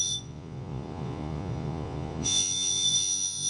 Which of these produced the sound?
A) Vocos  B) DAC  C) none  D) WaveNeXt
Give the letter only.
A